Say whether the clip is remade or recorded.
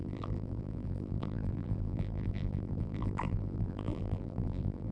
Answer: remade